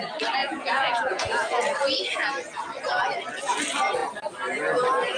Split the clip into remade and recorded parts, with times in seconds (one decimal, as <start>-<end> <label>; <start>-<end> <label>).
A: 0.0-0.4 recorded; 0.4-1.6 remade; 1.6-5.2 recorded